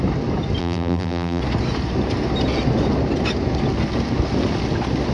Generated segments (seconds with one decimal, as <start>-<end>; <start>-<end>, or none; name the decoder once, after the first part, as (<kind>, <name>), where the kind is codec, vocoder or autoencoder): 0.6-1.4 (vocoder, BigVGAN v2)